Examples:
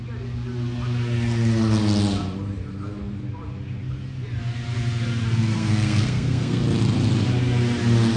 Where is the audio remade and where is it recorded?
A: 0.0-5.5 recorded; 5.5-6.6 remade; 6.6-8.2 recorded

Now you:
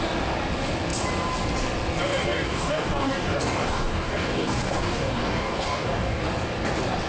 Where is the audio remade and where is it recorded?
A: 0.0-2.1 recorded; 2.1-6.2 remade; 6.2-7.1 recorded

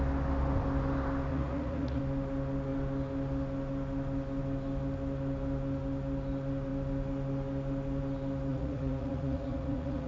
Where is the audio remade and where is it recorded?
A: 0.0-1.3 recorded; 1.3-2.0 remade; 2.0-8.5 recorded; 8.5-10.1 remade

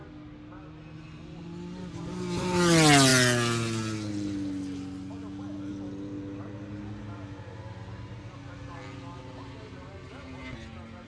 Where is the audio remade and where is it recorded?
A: 0.0-11.1 recorded